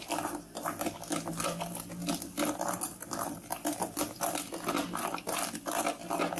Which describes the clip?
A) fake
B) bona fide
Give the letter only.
B